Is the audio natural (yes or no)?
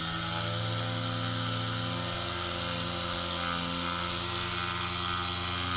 yes